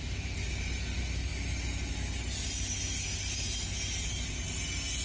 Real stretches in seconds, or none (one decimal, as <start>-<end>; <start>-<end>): 0.0-5.0